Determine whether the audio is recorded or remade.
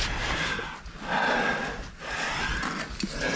recorded